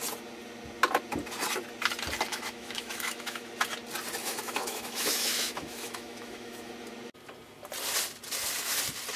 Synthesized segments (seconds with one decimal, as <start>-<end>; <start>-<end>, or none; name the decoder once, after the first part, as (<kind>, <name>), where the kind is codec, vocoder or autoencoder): 2.3-3.5 (autoencoder, DAC-VAE); 4.2-6.7